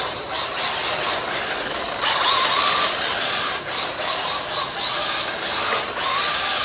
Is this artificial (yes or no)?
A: no